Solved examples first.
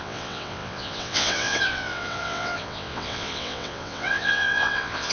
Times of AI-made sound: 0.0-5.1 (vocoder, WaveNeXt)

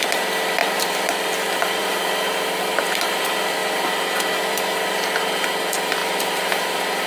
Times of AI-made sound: 0.6-1.1 (vocoder, BigVGAN v2); 1.8-3.2

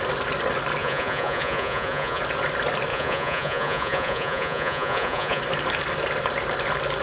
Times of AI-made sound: 0.8-2.2 (vocoder, Vocos); 2.9-5.4

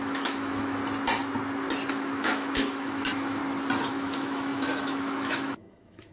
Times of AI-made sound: 0.0-0.8 (autoencoder, DAC-VAE); 1.9-3.4; 3.9-6.1